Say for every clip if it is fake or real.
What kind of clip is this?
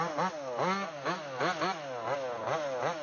real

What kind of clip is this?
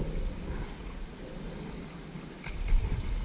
real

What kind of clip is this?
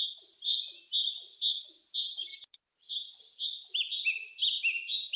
real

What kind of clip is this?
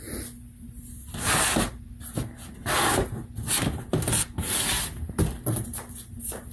real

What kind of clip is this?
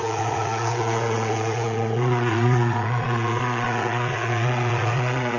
fake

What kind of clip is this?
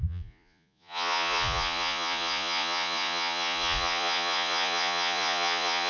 fake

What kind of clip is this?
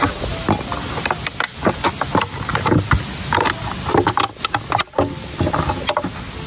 real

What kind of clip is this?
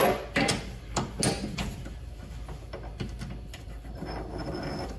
real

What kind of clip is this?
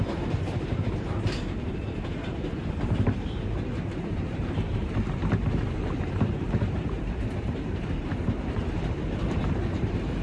fake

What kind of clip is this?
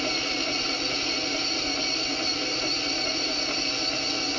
real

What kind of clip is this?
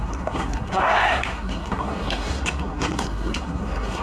fake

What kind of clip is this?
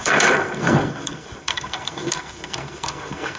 fake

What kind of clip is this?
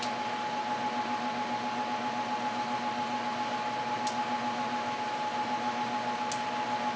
real